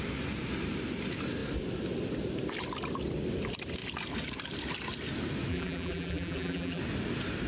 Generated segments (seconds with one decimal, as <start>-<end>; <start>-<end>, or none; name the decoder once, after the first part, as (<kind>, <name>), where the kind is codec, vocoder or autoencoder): 5.5-6.8 (vocoder, BigVGAN v2)